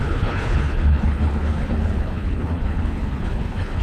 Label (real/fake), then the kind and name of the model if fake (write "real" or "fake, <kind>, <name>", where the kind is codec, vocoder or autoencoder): fake, codec, HILCodec